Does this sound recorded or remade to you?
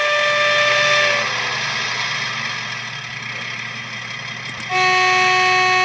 recorded